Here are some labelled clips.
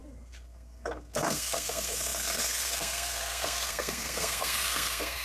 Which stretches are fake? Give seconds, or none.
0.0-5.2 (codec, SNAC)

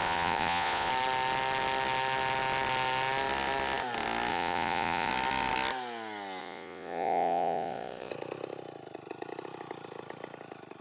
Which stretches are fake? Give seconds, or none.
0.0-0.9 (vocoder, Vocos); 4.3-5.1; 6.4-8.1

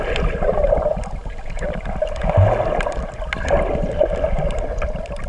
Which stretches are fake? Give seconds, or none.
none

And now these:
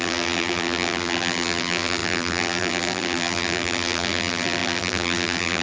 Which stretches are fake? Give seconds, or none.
0.0-5.6 (vocoder, BigVGAN v2)